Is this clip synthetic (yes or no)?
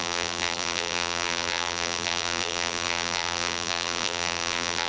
yes